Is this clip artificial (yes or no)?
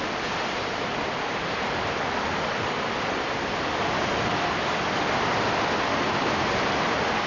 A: no